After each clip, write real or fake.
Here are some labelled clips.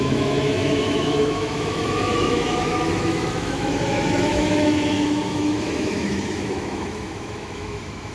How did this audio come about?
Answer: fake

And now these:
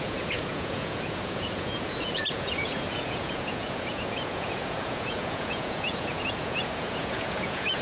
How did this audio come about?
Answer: fake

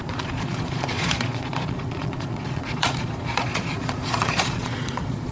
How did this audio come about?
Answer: fake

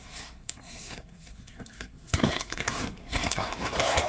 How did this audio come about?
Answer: fake